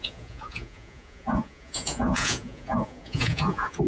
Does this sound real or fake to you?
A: fake